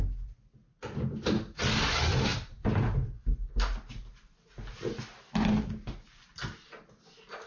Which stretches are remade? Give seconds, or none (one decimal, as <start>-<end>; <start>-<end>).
none